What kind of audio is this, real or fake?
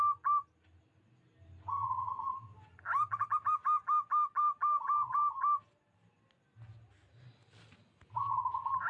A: real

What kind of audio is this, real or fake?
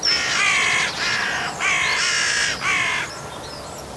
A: real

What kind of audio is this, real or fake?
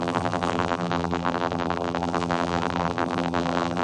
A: fake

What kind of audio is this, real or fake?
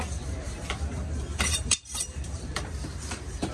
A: fake